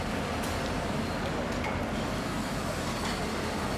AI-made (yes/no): no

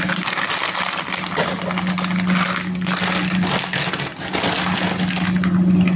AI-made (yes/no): no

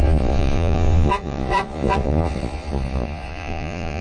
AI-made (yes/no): yes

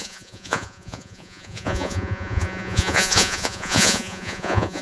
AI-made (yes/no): yes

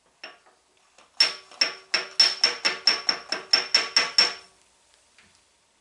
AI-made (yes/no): no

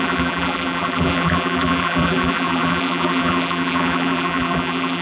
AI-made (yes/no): yes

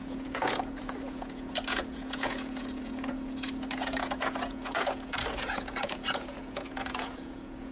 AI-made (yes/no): yes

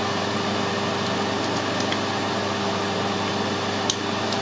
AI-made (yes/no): no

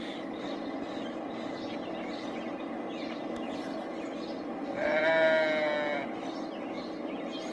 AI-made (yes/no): no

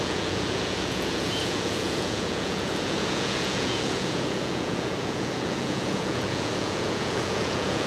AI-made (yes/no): yes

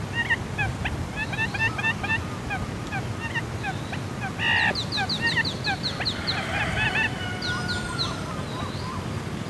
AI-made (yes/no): no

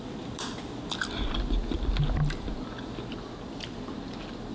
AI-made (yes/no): no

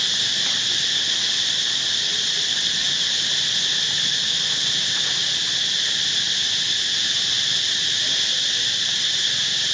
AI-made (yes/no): no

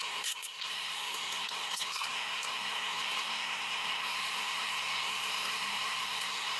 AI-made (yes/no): yes